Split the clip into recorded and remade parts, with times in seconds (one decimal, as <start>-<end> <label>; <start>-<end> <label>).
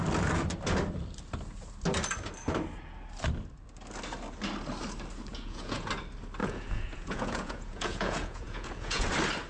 0.0-5.3 recorded; 5.3-5.9 remade; 5.9-6.4 recorded; 6.4-9.1 remade; 9.1-9.5 recorded